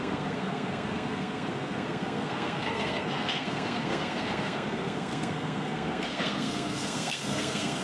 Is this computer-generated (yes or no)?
yes